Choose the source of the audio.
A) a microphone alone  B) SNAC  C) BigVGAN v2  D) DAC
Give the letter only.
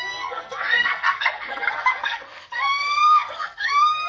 B